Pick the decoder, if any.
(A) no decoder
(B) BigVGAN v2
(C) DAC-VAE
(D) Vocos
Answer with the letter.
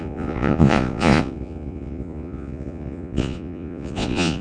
D